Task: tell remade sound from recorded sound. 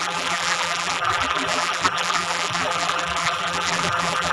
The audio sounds remade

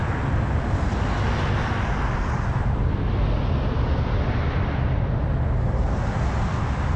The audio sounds recorded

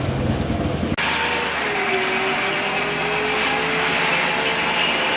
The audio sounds recorded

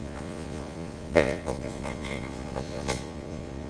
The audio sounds remade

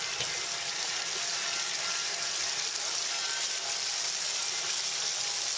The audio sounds recorded